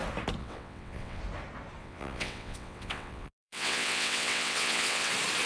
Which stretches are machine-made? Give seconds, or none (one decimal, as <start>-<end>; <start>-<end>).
0.4-1.2; 1.8-5.1